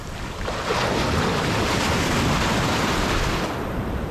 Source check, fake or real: real